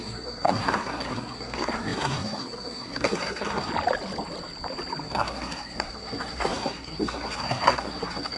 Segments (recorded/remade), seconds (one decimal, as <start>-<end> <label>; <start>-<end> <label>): 0.0-3.7 remade; 3.7-5.0 recorded; 5.0-8.4 remade